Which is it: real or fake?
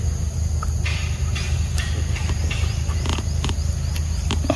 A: real